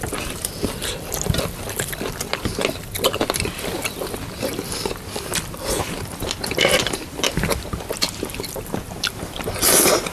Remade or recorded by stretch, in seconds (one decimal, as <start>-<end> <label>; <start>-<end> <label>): 0.0-2.3 remade; 2.3-3.2 recorded; 3.2-10.1 remade